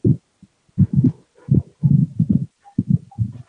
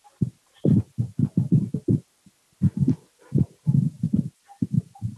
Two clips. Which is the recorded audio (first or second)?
second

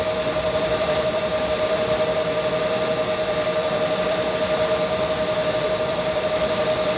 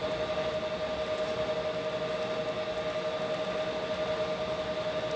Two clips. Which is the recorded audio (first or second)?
second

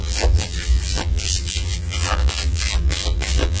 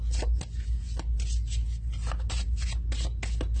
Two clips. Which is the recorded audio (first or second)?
second